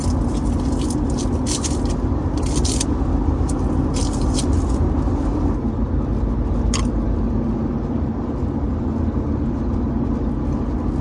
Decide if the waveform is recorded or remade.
recorded